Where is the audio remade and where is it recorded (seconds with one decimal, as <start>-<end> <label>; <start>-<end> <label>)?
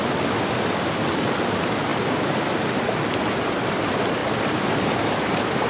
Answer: 0.0-1.9 recorded; 1.9-2.8 remade; 2.8-5.7 recorded